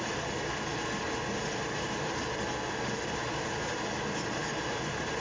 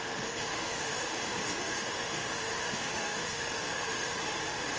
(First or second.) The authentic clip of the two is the first